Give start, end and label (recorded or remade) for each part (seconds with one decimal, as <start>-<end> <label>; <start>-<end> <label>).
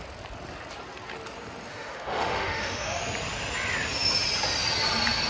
0.0-1.7 recorded; 1.7-3.0 remade; 3.0-5.3 recorded